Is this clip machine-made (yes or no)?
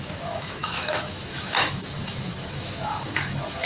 yes